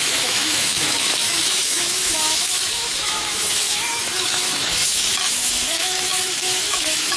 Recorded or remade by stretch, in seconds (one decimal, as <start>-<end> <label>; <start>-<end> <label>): 0.0-7.2 remade